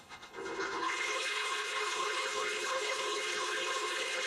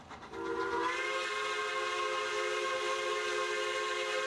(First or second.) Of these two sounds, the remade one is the first